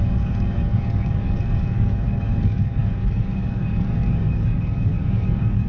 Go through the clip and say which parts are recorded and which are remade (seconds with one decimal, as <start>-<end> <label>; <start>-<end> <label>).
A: 0.0-5.7 remade